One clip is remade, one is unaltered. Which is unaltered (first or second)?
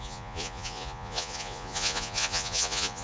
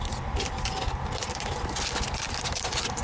second